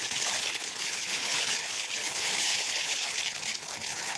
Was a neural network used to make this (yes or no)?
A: yes